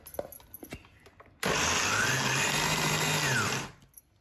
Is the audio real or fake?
real